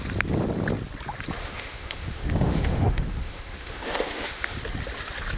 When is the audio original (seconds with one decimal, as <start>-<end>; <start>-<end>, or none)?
0.0-1.4; 4.6-5.4